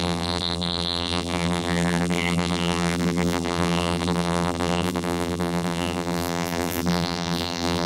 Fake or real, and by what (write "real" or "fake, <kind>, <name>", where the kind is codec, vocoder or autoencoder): fake, vocoder, BigVGAN v2